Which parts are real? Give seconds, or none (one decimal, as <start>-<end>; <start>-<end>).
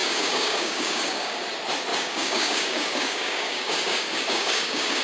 1.4-1.9